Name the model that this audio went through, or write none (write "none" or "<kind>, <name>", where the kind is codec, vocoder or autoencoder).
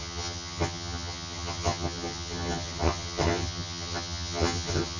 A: vocoder, HiFi-GAN